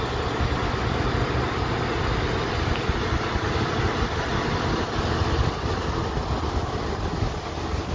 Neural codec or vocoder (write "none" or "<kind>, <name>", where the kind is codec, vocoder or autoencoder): none